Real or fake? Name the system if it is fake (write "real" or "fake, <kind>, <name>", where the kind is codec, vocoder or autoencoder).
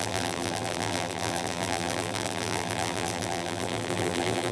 fake, vocoder, BigVGAN v2